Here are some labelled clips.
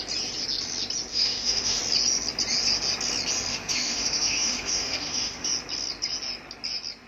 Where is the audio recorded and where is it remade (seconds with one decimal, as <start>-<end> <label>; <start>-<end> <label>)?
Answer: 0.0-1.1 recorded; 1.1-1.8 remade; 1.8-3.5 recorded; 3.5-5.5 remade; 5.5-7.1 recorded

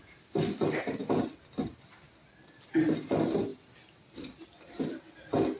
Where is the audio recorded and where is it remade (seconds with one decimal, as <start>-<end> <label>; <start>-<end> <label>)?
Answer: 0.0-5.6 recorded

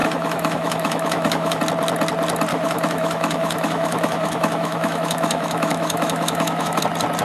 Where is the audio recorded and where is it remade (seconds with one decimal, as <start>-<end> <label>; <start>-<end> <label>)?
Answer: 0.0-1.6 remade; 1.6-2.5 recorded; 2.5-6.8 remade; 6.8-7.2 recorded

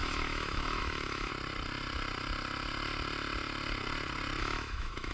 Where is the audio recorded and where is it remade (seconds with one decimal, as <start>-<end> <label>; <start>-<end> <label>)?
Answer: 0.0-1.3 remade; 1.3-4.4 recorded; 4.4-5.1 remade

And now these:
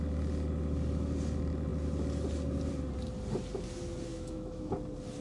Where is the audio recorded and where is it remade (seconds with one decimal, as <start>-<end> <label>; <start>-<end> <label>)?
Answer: 0.0-4.1 recorded; 4.1-4.7 remade; 4.7-5.2 recorded